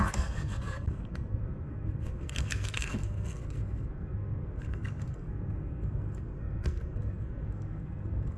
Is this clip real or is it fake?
fake